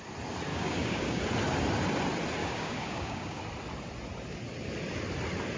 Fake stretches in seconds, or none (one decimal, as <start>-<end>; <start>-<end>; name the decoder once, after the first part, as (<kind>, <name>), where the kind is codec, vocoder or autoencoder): 0.5-1.2 (codec, DAC); 2.4-3.4